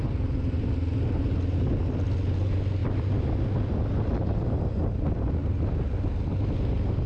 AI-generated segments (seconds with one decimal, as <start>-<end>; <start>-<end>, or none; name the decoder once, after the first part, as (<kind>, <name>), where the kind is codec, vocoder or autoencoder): none